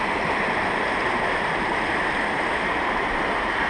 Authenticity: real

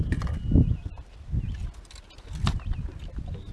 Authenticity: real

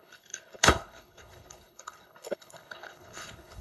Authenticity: fake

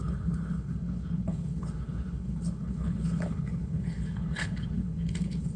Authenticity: fake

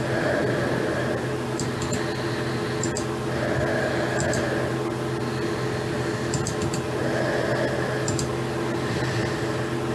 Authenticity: real